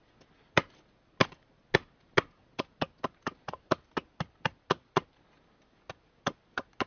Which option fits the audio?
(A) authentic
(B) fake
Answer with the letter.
A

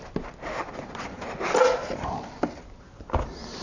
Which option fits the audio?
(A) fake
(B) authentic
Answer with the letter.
B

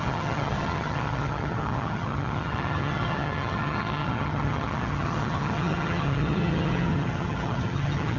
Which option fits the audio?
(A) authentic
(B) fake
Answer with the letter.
B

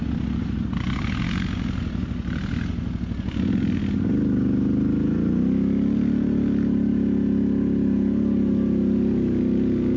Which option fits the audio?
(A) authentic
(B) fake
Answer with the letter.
A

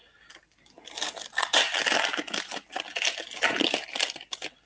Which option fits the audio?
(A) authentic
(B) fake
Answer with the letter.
A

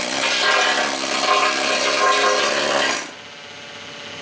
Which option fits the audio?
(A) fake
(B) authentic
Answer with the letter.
B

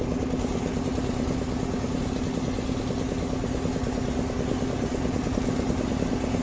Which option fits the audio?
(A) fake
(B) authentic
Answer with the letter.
B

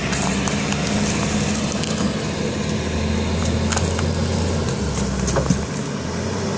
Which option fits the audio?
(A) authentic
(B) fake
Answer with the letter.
A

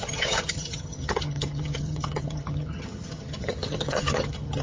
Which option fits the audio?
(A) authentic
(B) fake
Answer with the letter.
B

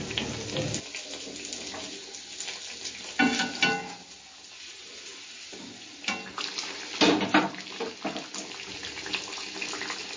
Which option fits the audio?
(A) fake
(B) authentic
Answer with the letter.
B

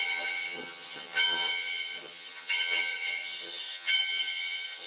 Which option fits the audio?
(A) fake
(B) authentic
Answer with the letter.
A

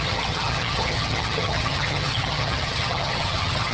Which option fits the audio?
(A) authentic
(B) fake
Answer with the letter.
B